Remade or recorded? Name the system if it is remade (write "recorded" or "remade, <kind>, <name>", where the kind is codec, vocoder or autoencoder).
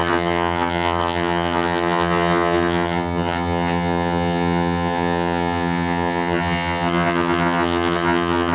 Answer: remade, vocoder, HiFi-GAN